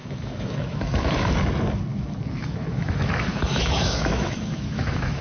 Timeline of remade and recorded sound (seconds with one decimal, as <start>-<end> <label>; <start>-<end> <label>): 0.0-1.3 remade; 1.3-1.9 recorded; 1.9-5.2 remade